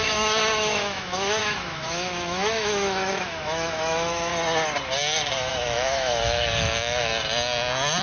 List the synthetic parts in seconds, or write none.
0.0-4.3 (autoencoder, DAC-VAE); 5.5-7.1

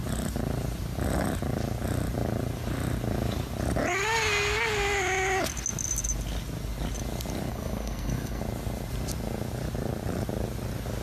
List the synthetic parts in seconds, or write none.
7.5-8.4 (codec, SNAC)